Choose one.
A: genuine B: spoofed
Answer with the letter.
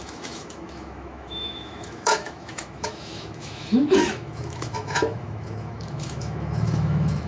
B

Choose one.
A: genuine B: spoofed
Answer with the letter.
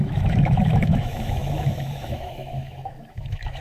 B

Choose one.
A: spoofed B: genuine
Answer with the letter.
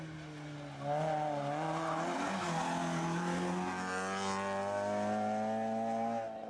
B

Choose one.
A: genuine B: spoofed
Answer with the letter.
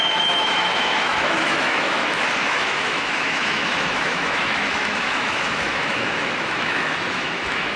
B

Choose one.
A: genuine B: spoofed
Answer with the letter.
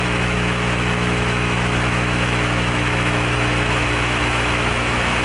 B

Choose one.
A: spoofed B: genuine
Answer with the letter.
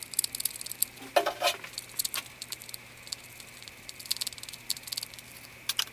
B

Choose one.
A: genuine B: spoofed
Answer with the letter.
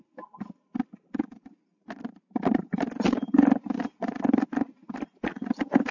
A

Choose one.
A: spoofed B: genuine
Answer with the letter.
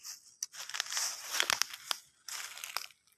B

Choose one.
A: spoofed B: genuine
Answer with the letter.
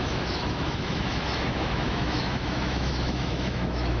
A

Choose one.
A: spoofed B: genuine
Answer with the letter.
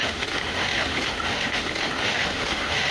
A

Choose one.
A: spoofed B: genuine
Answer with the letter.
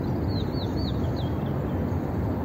B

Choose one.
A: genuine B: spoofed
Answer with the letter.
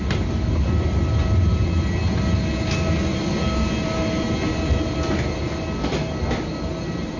A